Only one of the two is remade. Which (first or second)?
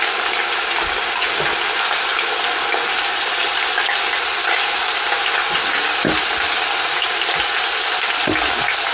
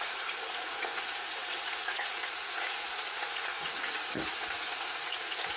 second